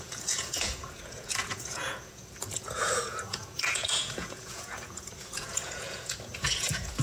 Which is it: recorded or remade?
remade